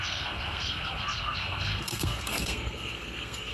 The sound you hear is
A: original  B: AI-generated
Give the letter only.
B